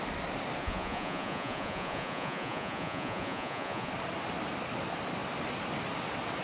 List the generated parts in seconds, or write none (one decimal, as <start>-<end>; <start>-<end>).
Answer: 0.6-3.9